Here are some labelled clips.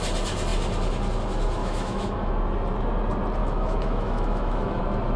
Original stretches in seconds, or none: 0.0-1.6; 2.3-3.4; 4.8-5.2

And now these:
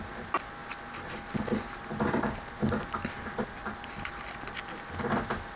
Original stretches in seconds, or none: 0.0-5.6

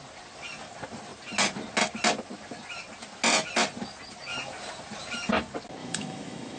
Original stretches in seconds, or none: 0.0-5.8

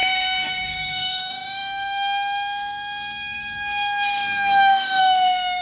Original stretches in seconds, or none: none

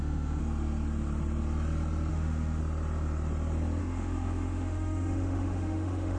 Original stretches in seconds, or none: 0.4-2.1; 2.6-3.8